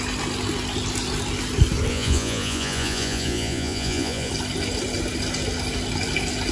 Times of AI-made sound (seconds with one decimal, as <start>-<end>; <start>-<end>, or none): 1.9-4.3